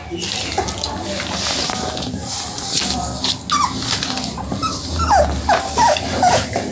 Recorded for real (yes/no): yes